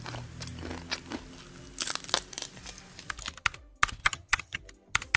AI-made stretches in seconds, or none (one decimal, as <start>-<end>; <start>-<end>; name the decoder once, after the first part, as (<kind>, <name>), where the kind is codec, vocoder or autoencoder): 4.0-4.6 (vocoder, HiFi-GAN)